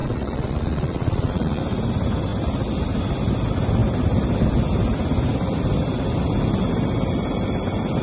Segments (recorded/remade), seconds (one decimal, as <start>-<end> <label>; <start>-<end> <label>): 0.0-1.6 remade; 1.6-8.0 recorded